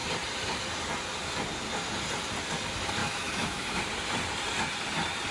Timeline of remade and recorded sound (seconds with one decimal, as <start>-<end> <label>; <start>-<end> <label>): 0.0-3.0 recorded; 3.0-3.8 remade; 3.8-5.3 recorded